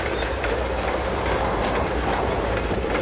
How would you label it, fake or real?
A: fake